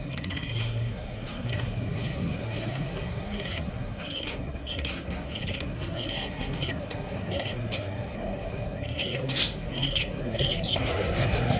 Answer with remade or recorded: remade